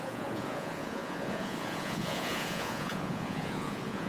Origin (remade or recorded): remade